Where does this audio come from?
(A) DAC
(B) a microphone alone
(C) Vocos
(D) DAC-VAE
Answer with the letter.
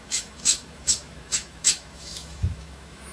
D